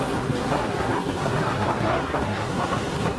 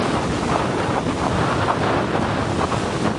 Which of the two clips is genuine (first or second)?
second